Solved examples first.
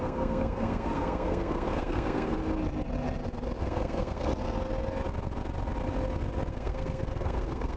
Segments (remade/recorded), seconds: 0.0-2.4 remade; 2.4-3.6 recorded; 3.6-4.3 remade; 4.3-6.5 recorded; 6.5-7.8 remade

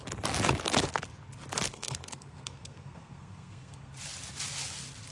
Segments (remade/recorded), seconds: 0.0-1.7 recorded; 1.7-3.9 remade; 3.9-5.1 recorded

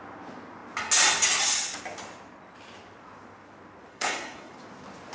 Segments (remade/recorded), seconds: 0.0-3.9 recorded; 3.9-4.5 remade; 4.5-5.1 recorded

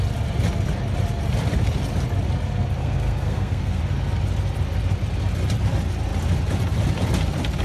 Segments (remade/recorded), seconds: 0.0-2.8 recorded; 2.8-3.8 remade; 3.8-7.6 recorded